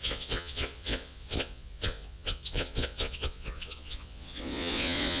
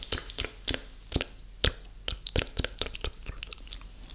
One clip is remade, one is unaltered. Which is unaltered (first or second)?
second